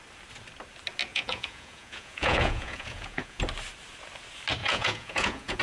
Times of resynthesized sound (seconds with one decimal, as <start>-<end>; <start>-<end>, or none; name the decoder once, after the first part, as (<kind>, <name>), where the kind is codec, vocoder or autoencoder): 1.1-3.4 (vocoder, Vocos); 4.6-5.6